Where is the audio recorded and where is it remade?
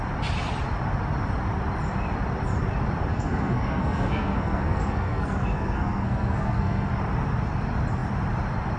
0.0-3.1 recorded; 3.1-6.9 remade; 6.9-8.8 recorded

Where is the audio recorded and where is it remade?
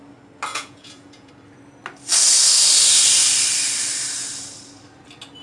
0.0-0.5 recorded; 0.5-1.3 remade; 1.3-5.4 recorded